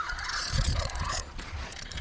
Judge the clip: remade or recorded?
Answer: remade